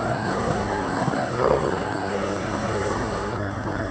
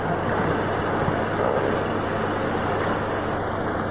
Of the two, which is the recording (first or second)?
second